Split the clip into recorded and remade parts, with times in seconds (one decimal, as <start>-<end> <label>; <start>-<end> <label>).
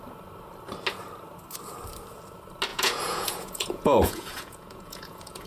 0.0-2.7 recorded; 2.7-5.5 remade